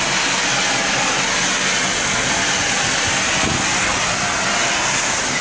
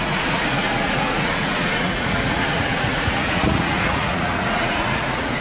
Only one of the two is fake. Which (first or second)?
second